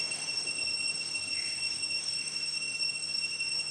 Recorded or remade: remade